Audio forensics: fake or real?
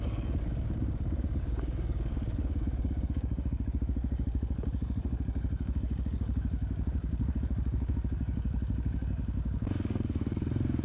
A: fake